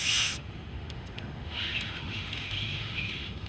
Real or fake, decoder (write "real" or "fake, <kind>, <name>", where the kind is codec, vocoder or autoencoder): fake, autoencoder, DAC-VAE